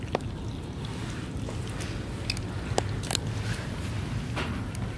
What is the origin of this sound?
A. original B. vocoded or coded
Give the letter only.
A